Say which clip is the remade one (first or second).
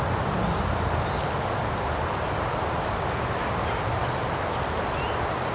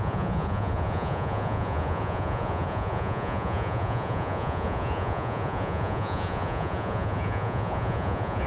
second